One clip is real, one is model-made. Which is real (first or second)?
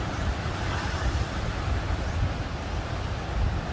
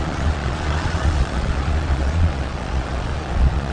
first